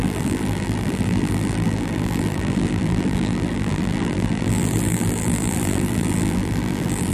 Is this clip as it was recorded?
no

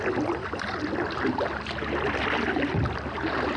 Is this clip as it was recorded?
yes